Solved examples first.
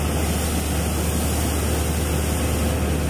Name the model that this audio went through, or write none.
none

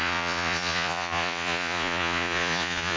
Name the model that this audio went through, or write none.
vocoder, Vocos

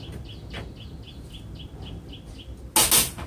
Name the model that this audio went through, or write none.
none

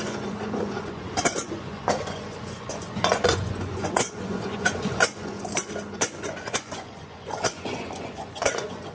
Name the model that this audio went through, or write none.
vocoder, Vocos